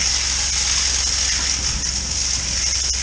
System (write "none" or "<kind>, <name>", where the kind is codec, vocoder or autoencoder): none